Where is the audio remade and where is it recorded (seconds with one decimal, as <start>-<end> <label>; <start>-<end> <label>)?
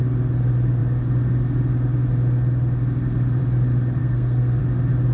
0.0-4.0 recorded; 4.0-4.6 remade; 4.6-5.1 recorded